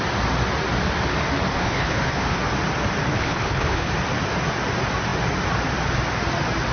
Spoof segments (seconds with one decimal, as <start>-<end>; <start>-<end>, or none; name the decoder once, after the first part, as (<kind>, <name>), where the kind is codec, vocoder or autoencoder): 1.5-2.4 (codec, HILCodec); 3.1-3.9